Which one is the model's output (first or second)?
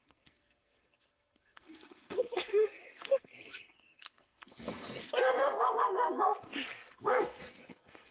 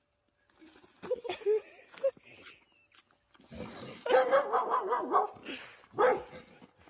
first